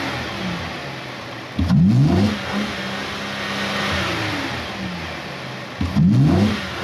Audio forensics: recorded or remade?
recorded